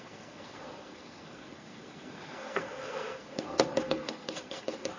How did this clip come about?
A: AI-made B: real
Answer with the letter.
A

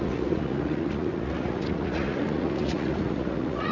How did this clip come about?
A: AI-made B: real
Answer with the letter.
A